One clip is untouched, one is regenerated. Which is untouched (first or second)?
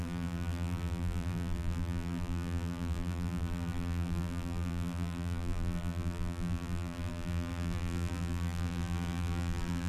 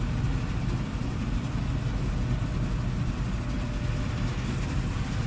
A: second